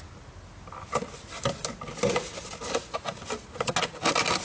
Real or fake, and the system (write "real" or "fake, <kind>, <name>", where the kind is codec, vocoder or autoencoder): real